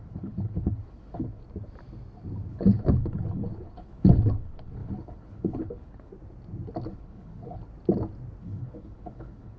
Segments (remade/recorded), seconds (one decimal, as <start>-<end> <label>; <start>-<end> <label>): 0.0-1.4 remade; 1.4-2.5 recorded; 2.5-6.1 remade; 6.1-6.9 recorded; 6.9-7.6 remade; 7.6-8.4 recorded; 8.4-9.6 remade